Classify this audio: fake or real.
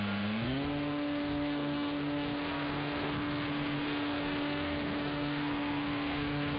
fake